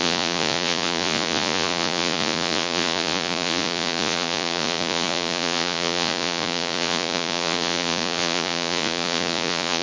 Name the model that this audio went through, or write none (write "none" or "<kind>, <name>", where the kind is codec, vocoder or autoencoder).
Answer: vocoder, Vocos